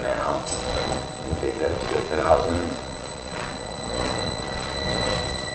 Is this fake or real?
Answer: fake